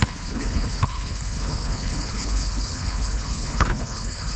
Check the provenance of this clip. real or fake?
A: fake